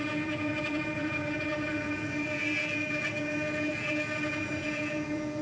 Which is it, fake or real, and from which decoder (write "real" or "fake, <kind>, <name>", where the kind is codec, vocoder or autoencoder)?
fake, vocoder, Vocos